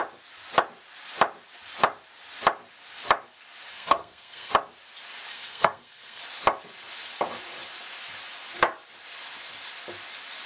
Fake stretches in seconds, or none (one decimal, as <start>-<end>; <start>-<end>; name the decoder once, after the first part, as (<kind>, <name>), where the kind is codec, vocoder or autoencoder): 3.7-4.5 (codec, SNAC); 5.3-6.2